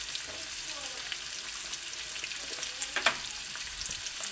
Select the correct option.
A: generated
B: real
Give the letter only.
B